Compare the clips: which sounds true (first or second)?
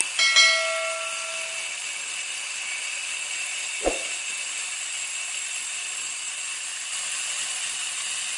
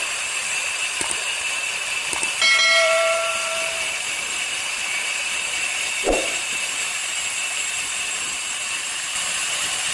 first